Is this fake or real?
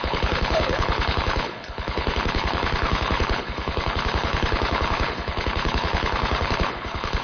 fake